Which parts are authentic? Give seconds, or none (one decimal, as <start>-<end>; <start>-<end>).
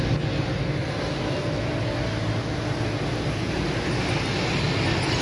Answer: 0.0-5.2